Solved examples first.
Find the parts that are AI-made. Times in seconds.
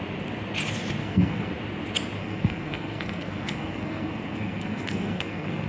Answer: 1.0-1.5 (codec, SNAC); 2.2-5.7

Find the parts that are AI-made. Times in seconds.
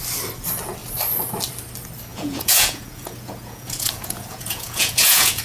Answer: 2.1-5.4 (vocoder, Vocos)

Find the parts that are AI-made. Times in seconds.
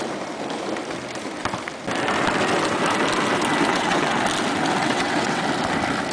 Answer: 3.7-4.2 (vocoder, WaveNeXt); 4.8-5.4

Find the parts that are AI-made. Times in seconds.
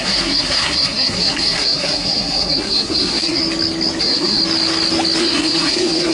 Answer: 0.0-3.4 (codec, SNAC); 4.0-4.4; 5.2-6.1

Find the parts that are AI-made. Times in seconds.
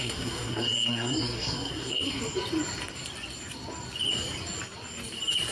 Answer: 0.0-2.2 (codec, SNAC)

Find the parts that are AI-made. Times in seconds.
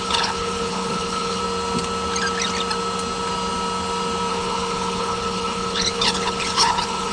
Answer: 0.0-1.4 (codec, HILCodec); 4.3-7.1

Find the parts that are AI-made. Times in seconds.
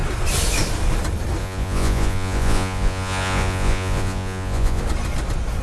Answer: 1.4-4.8 (vocoder, Vocos)